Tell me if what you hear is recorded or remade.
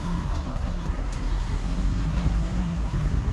remade